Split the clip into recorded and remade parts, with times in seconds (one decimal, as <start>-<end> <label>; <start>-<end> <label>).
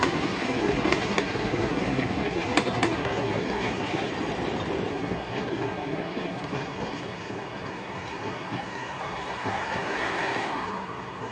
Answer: 0.0-4.1 remade; 4.1-4.9 recorded; 4.9-11.3 remade